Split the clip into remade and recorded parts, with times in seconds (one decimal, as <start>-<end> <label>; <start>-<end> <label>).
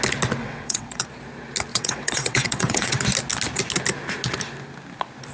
0.0-0.4 recorded; 0.4-1.0 remade; 1.0-1.7 recorded; 1.7-3.0 remade; 3.0-5.3 recorded